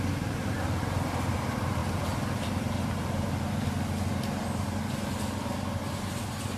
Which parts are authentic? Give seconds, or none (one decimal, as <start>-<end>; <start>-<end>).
0.0-6.6